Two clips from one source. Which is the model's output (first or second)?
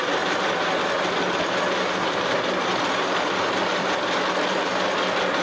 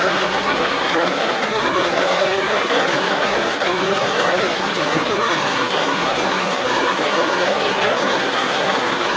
second